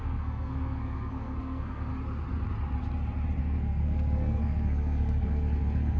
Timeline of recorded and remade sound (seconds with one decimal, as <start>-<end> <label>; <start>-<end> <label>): 0.0-1.9 remade; 1.9-3.4 recorded; 3.4-6.0 remade